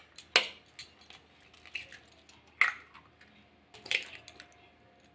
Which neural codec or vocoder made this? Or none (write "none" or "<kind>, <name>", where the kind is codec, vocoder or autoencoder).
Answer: none